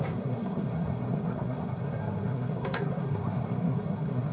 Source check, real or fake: fake